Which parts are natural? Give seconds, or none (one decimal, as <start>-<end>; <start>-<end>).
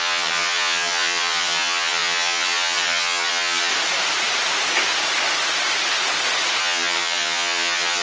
3.7-6.6